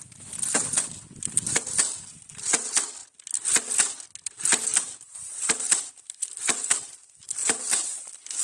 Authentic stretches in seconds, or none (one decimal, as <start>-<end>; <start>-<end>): 0.0-4.7; 5.8-7.4; 8.0-8.4